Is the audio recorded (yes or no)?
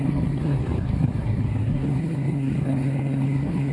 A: no